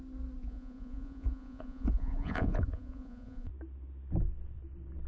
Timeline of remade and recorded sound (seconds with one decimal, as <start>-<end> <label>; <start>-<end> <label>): 0.0-0.4 recorded; 0.4-3.5 remade; 3.5-5.1 recorded